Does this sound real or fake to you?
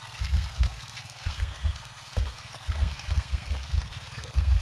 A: fake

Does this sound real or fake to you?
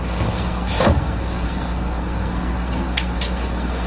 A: fake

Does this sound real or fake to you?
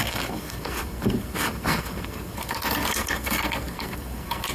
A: fake